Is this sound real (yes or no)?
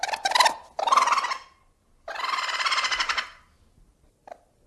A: yes